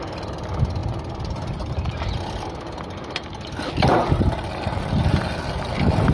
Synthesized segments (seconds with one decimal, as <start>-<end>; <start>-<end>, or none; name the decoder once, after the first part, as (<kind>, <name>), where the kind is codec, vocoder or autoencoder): none